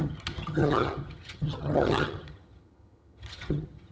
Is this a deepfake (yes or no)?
yes